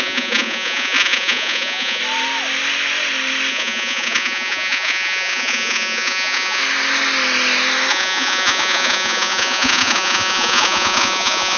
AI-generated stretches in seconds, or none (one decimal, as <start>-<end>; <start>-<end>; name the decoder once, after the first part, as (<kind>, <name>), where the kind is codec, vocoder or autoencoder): 0.0-2.0 (vocoder, Vocos); 3.5-6.6; 7.9-11.6